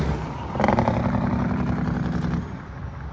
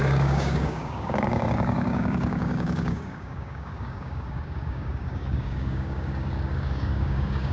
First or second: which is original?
first